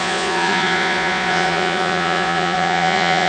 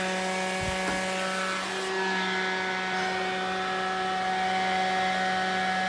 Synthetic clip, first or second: first